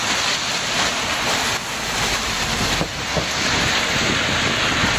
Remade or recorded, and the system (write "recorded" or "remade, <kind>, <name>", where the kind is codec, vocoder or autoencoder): recorded